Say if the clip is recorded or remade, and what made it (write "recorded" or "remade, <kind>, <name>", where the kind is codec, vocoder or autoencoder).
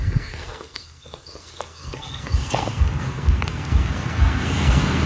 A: remade, codec, SNAC